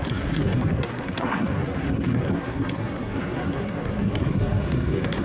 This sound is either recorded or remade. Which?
remade